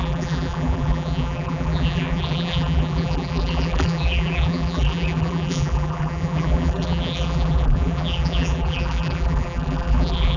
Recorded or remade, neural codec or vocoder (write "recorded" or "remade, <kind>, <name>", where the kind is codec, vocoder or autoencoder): remade, vocoder, BigVGAN v2